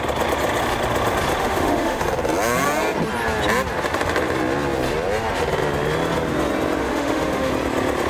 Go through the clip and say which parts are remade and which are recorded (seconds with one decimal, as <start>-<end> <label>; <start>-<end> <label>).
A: 0.0-1.4 recorded; 1.4-2.0 remade; 2.0-6.8 recorded; 6.8-7.5 remade; 7.5-8.1 recorded